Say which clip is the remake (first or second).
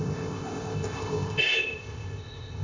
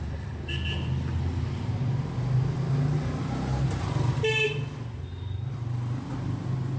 first